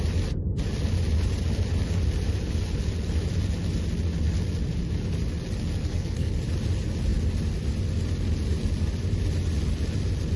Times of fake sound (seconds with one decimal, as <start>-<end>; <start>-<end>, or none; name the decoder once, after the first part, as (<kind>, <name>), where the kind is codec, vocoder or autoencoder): 5.8-6.3 (codec, SNAC)